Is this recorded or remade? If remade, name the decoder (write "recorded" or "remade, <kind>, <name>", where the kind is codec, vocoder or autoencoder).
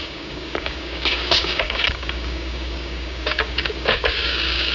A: remade, codec, DAC